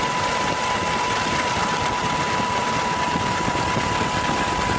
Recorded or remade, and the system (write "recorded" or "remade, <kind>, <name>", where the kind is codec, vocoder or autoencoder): remade, vocoder, BigVGAN v2